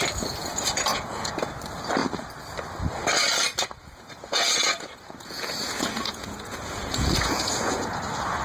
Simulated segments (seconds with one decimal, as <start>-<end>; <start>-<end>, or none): 0.4-1.5; 3.8-8.0